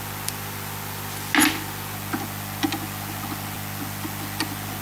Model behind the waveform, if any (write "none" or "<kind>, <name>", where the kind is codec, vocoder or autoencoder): none